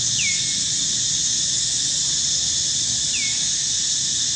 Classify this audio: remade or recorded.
recorded